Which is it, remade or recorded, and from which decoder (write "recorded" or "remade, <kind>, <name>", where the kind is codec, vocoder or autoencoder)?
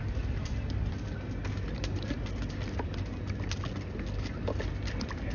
recorded